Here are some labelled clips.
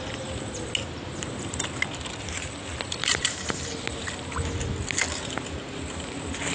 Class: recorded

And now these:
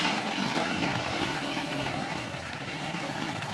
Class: remade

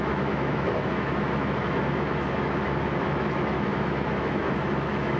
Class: remade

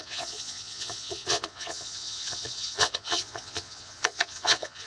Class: remade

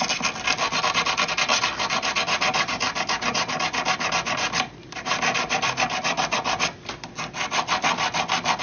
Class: recorded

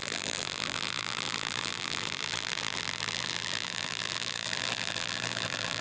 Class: remade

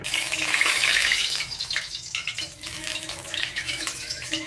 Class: remade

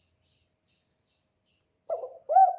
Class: recorded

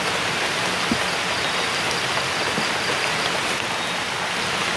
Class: recorded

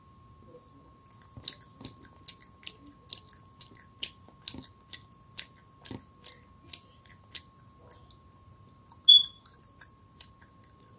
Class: recorded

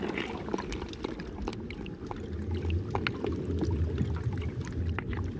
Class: recorded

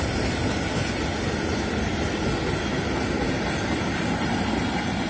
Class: recorded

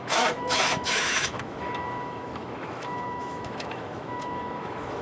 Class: remade